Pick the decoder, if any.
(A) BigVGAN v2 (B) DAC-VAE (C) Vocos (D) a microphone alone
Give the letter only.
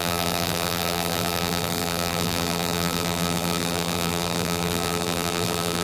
A